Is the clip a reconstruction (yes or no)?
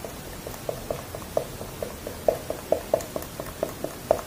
no